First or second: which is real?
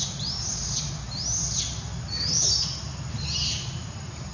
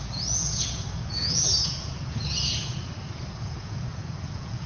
first